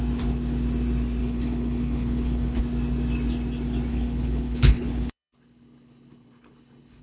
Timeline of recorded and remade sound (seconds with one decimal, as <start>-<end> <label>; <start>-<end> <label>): 0.0-1.2 recorded; 1.2-2.6 remade; 2.6-3.9 recorded; 3.9-7.0 remade